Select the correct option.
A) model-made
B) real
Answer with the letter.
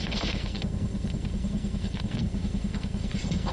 A